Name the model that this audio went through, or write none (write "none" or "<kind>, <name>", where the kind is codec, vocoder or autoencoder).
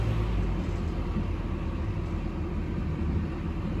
none